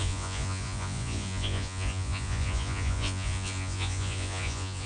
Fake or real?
fake